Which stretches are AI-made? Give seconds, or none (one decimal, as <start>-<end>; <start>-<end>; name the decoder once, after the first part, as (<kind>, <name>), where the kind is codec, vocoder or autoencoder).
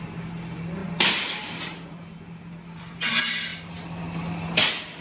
none